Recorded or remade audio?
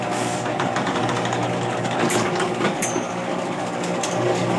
remade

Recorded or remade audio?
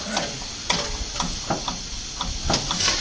recorded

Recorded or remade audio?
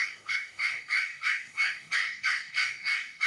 remade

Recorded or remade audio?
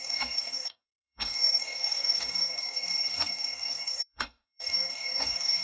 remade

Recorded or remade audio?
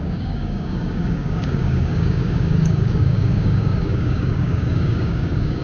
remade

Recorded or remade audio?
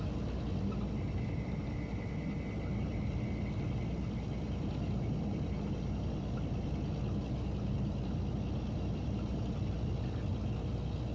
recorded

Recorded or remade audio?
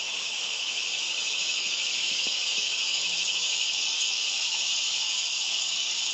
remade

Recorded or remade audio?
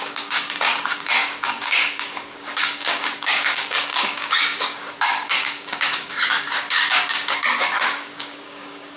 remade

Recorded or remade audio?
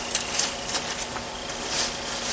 recorded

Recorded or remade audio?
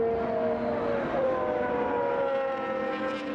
recorded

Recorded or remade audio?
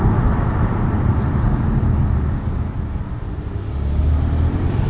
recorded